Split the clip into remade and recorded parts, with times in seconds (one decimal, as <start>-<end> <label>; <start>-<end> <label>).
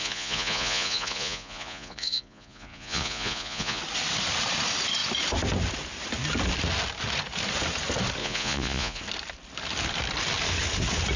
0.0-3.8 remade; 3.8-8.2 recorded; 8.2-9.0 remade; 9.0-11.2 recorded